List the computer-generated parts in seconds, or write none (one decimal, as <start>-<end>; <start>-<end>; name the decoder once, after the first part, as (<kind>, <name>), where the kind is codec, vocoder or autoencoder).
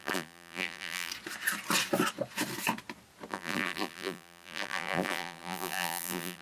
0.0-1.1 (vocoder, BigVGAN v2); 3.3-6.4